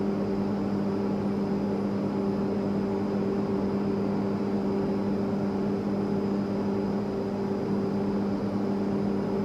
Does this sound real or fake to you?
real